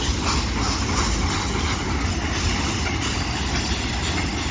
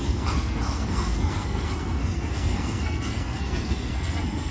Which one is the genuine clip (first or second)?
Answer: first